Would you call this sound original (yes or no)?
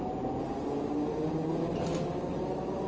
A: yes